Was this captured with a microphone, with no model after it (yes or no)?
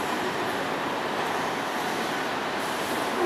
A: yes